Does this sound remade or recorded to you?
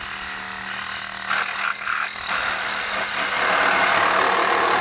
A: recorded